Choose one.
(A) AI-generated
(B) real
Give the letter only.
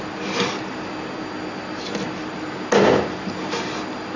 B